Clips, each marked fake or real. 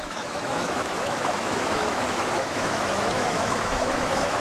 fake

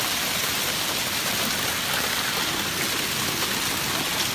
real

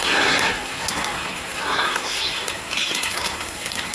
fake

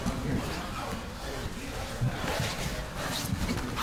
real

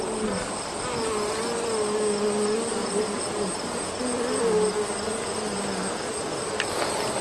real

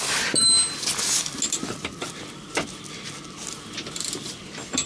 real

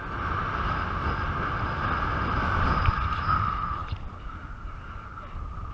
real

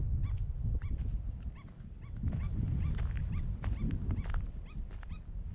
real